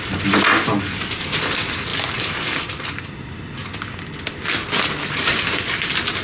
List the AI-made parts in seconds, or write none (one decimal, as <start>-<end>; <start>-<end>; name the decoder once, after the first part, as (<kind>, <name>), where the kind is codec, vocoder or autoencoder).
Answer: none